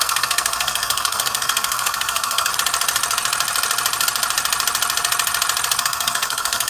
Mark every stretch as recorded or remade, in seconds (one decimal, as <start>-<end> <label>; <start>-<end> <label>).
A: 0.0-2.5 remade; 2.5-5.8 recorded; 5.8-6.7 remade